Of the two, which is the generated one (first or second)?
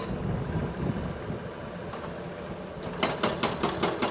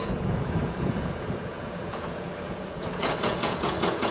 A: second